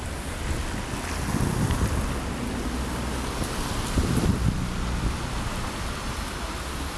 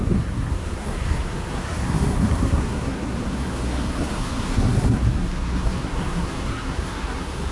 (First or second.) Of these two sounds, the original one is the first